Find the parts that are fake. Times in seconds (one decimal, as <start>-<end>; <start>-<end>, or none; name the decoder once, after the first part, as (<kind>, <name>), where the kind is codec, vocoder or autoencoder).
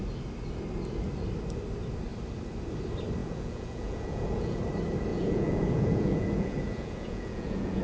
3.2-4.6 (vocoder, Vocos); 5.1-7.8